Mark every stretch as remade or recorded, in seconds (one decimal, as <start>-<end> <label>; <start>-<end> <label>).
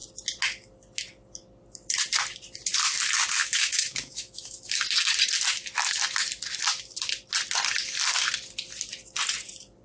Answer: 0.0-3.4 recorded; 3.4-4.8 remade; 4.8-9.8 recorded